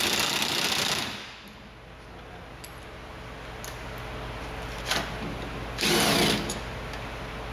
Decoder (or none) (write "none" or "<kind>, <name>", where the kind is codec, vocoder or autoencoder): none